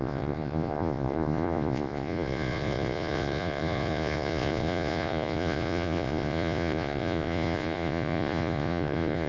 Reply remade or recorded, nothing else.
remade